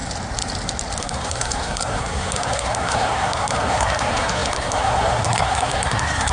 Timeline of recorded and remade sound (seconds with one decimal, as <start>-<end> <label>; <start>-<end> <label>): 0.0-1.0 recorded; 1.0-6.3 remade